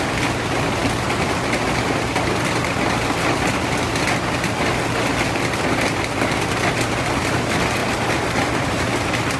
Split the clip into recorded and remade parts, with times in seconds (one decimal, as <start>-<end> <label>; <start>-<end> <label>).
0.0-9.4 recorded